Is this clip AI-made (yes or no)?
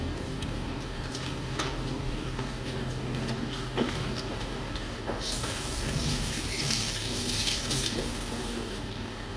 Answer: yes